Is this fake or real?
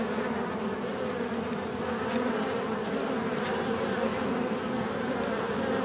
real